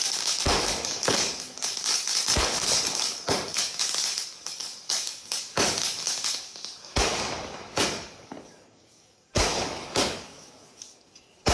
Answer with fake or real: fake